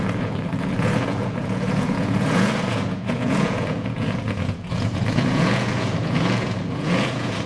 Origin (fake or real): fake